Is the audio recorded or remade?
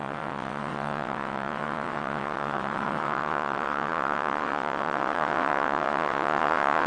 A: remade